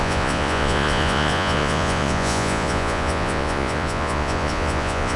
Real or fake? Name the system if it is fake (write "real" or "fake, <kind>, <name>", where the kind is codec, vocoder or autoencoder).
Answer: fake, vocoder, Vocos